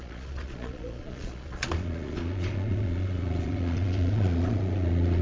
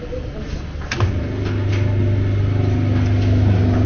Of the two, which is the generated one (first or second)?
first